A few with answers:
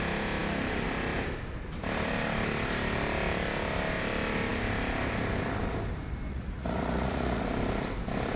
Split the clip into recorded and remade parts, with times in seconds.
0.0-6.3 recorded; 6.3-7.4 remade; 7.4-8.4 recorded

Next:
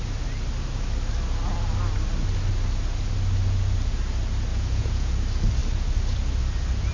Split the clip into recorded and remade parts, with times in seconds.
0.0-4.5 recorded; 4.5-5.1 remade; 5.1-6.9 recorded

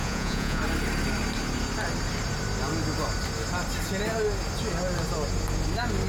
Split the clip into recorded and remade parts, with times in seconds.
0.0-0.6 remade; 0.6-6.1 recorded

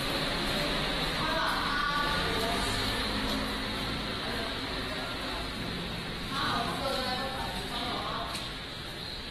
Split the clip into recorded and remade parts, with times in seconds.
0.0-4.1 recorded; 4.1-4.7 remade; 4.7-9.3 recorded

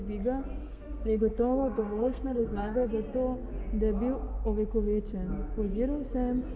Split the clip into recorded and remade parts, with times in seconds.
0.0-0.6 recorded; 0.6-2.9 remade; 2.9-6.6 recorded